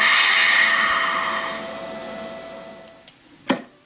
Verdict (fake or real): real